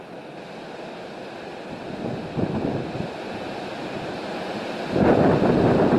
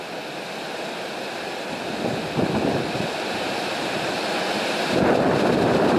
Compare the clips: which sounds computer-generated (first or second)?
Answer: second